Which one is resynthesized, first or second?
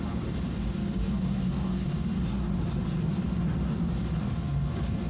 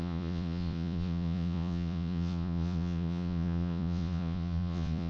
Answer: second